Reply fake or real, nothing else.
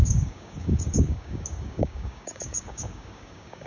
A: fake